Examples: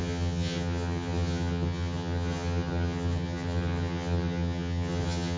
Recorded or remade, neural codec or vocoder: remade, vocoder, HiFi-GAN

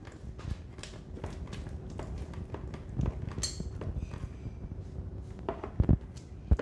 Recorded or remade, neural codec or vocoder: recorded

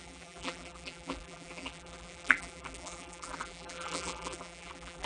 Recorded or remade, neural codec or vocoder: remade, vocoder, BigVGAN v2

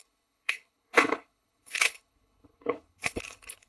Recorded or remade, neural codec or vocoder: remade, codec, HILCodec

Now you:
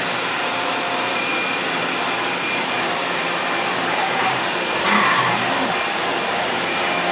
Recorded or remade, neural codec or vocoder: remade, vocoder, BigVGAN v2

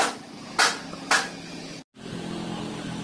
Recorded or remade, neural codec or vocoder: recorded